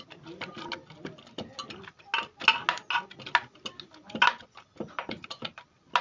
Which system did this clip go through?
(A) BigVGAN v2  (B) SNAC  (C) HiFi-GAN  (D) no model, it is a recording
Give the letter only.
D